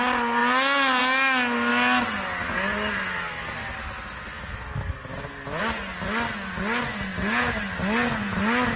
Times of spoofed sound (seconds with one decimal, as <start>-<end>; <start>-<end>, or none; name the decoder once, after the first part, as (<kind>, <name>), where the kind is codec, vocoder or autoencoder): none